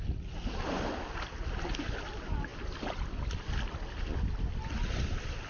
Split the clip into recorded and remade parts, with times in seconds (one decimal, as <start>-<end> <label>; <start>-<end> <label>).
0.0-5.5 recorded